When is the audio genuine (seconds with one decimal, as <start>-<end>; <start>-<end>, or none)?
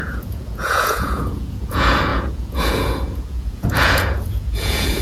none